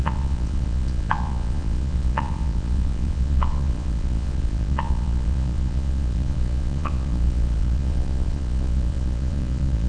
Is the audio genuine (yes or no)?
no